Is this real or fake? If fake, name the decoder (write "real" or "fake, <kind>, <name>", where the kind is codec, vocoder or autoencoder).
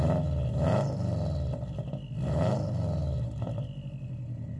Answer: real